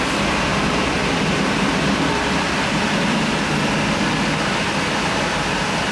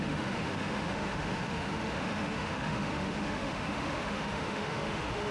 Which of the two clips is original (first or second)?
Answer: first